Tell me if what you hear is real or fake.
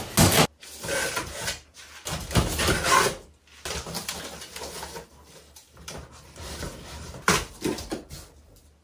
real